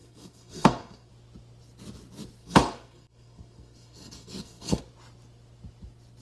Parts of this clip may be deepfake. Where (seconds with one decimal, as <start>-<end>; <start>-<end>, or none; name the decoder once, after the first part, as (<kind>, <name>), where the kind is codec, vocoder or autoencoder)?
0.0-1.1 (codec, SNAC); 2.4-4.8